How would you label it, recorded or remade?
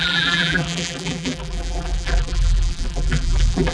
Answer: remade